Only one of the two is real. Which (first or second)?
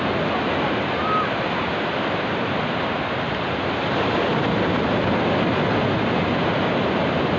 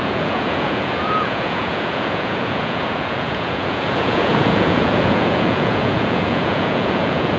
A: first